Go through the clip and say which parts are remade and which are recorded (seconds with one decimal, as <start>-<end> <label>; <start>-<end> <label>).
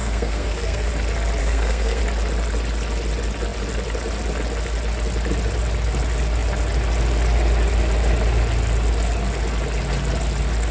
0.0-0.9 remade; 0.9-1.4 recorded; 1.4-2.0 remade; 2.0-10.7 recorded